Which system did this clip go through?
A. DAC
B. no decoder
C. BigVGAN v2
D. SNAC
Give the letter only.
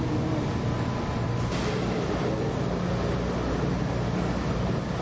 B